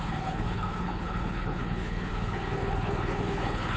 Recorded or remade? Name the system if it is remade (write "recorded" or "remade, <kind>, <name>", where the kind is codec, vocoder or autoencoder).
remade, codec, HILCodec